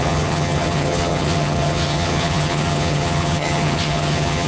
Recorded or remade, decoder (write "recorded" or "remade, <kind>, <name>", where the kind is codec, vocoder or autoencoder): remade, vocoder, HiFi-GAN